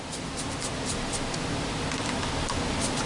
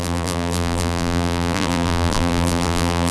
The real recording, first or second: first